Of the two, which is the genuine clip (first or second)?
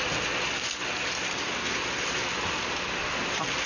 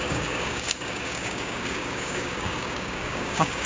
first